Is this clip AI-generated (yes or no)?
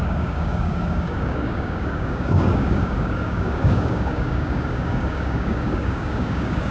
yes